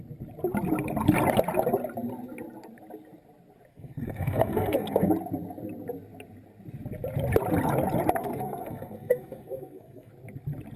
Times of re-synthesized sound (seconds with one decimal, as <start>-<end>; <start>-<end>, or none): 3.7-5.1; 8.2-10.1